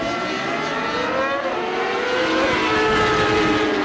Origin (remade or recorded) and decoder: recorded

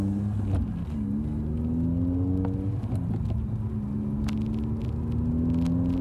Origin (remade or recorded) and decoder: recorded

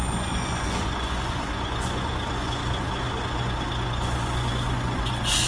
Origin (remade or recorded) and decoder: remade, vocoder, Vocos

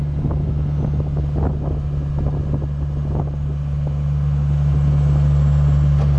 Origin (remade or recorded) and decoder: recorded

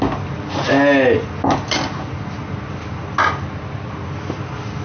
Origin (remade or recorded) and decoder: recorded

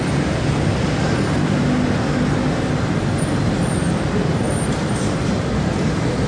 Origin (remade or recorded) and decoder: recorded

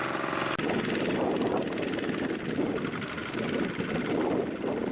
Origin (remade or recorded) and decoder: recorded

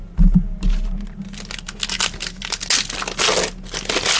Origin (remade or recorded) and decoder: recorded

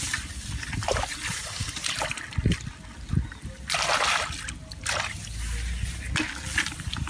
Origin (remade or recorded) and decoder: recorded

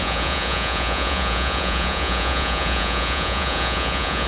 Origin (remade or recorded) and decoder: remade, vocoder, Vocos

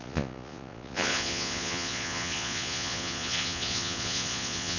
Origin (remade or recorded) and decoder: remade, vocoder, Vocos